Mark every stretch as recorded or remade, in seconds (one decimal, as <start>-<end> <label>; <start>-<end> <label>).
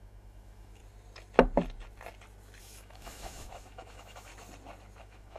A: 0.0-0.8 remade; 0.8-2.6 recorded; 2.6-4.3 remade; 4.3-5.0 recorded; 5.0-5.4 remade